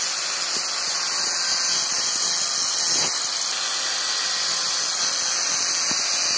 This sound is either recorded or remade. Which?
recorded